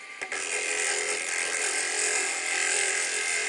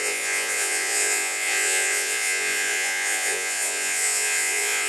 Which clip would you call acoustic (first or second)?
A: first